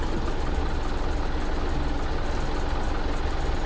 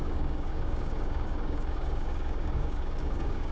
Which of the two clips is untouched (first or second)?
first